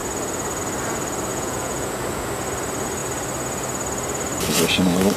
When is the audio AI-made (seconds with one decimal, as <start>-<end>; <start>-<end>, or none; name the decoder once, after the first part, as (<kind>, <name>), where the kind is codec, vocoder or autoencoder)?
1.3-2.3 (vocoder, Vocos)